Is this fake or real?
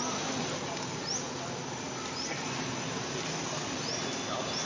real